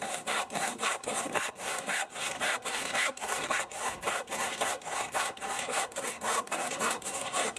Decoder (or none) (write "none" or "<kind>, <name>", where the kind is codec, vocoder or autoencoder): codec, SNAC